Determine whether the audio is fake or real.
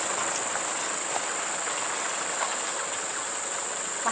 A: real